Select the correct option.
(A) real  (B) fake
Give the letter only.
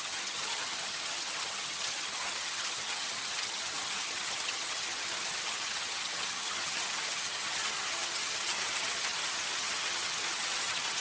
B